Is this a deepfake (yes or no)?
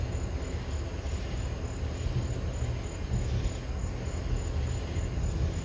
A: no